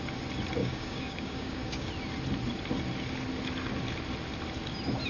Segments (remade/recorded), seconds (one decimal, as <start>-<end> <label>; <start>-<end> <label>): 0.0-0.6 recorded; 0.6-1.9 remade; 1.9-5.1 recorded